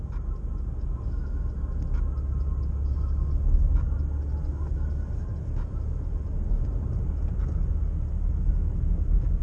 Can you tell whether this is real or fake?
real